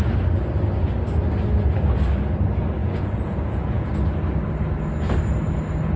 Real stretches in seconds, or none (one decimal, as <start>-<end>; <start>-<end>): 0.0-2.8; 3.9-6.0